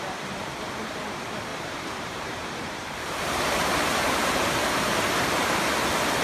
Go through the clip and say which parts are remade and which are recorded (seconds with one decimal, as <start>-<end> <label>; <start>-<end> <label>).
0.0-1.5 recorded; 1.5-4.9 remade; 4.9-6.2 recorded